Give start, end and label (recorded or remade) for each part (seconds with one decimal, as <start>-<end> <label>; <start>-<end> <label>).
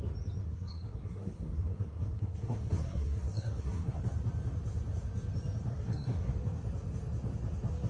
0.0-0.4 recorded; 0.4-4.0 remade; 4.0-5.7 recorded; 5.7-6.3 remade; 6.3-7.9 recorded